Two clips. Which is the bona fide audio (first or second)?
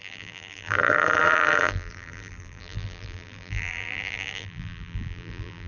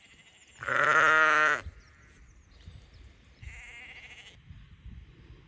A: second